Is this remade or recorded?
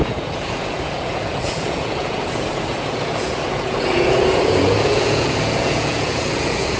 remade